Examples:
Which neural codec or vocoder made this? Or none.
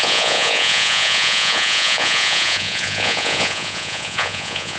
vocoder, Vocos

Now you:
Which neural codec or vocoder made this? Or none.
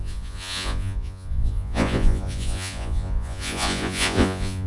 vocoder, Vocos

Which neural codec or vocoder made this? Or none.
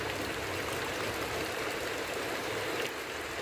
none